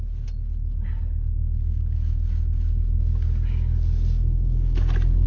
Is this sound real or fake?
real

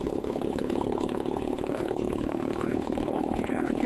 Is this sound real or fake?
fake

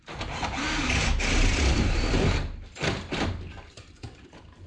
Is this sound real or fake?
fake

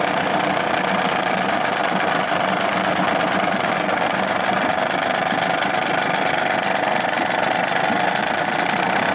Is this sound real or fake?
real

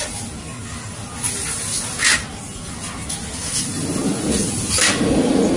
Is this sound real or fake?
real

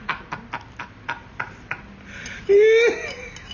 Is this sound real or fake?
real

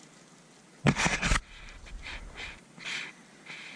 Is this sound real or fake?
real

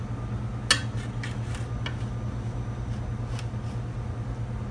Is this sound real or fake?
real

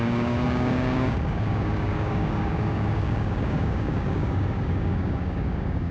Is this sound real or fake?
fake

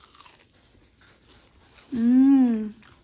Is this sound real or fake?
real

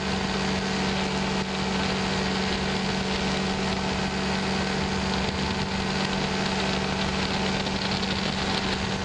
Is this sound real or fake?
real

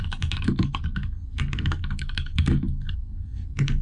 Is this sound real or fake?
fake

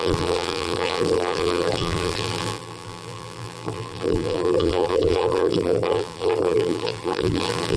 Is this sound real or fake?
fake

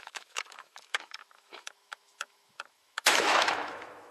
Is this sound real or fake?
fake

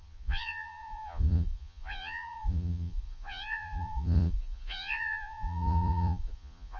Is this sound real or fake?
fake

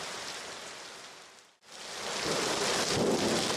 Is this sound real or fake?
real